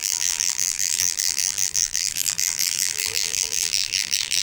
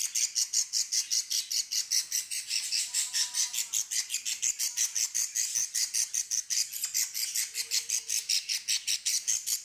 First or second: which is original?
second